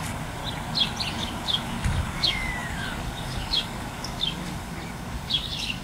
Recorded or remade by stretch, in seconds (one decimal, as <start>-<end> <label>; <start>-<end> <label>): 0.0-0.4 remade; 0.4-1.1 recorded; 1.1-5.8 remade